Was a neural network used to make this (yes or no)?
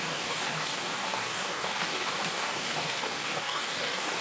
yes